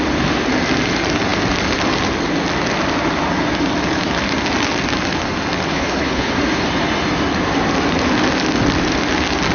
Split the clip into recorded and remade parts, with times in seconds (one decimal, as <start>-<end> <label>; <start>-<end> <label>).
0.0-5.7 recorded; 5.7-6.3 remade; 6.3-9.5 recorded